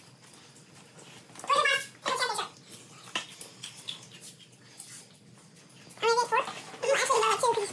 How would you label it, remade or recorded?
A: recorded